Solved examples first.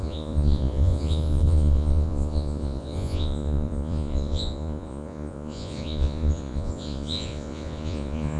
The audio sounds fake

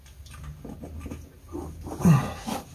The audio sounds real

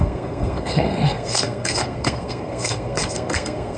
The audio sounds fake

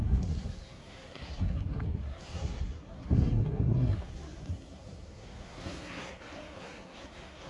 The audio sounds fake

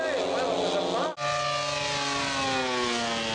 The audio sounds real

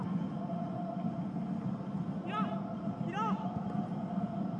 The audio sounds real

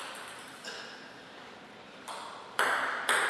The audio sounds real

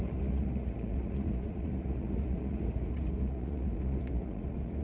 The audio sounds fake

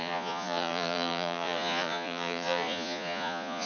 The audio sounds fake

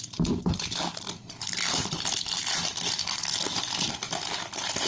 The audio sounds real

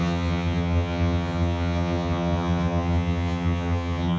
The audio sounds fake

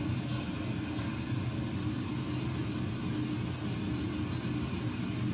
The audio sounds real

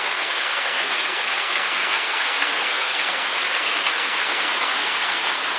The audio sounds fake